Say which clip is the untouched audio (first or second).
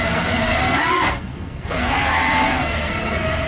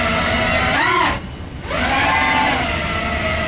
second